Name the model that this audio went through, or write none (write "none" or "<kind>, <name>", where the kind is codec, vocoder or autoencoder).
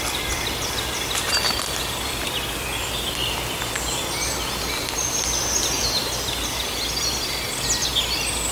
none